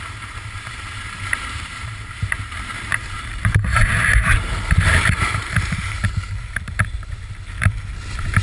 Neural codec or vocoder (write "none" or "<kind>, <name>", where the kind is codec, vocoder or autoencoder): vocoder, BigVGAN v2